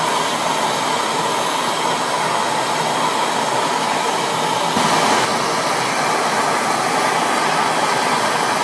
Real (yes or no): yes